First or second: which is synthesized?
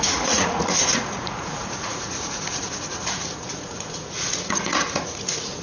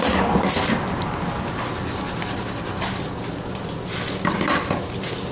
first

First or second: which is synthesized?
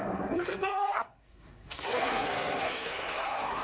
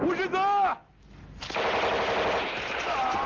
first